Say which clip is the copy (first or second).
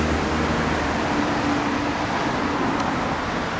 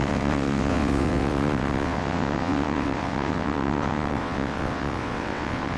second